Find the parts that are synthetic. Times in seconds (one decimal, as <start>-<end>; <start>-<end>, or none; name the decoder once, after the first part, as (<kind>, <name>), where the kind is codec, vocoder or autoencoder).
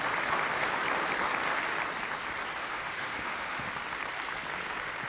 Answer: 2.6-3.7 (autoencoder, DAC-VAE)